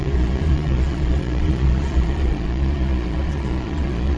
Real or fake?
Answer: fake